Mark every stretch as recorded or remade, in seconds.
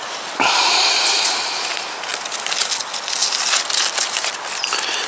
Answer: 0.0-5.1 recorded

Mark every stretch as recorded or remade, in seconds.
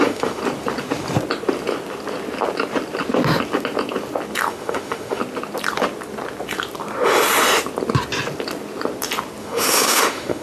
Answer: 0.0-0.4 remade; 0.4-4.5 recorded; 4.5-5.2 remade; 5.2-9.4 recorded; 9.4-10.4 remade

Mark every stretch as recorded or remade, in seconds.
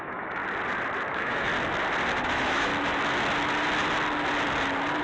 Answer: 0.0-0.4 remade; 0.4-1.1 recorded; 1.1-1.5 remade; 1.5-2.2 recorded; 2.2-2.7 remade; 2.7-5.0 recorded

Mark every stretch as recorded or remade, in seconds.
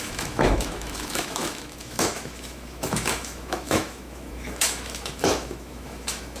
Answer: 0.0-6.4 remade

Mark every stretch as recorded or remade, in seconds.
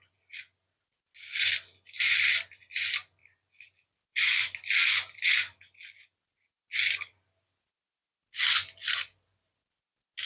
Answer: 0.0-10.3 recorded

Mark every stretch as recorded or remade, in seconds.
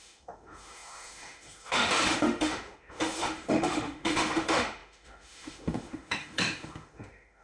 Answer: 0.0-7.4 remade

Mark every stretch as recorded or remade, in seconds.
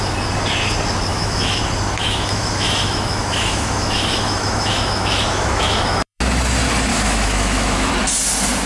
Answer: 0.0-1.1 recorded; 1.1-1.6 remade; 1.6-2.0 recorded; 2.0-6.2 remade; 6.2-6.9 recorded; 6.9-7.9 remade; 7.9-8.7 recorded